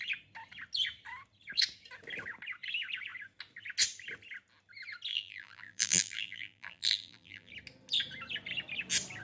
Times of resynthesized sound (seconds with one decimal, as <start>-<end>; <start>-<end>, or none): 5.1-7.5